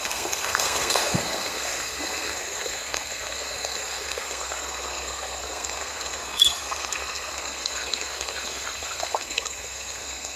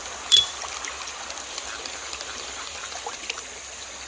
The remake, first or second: first